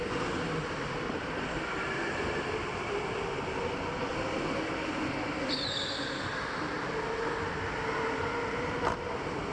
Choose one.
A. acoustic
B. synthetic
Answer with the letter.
A